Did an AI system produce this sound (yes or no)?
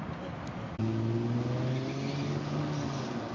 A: no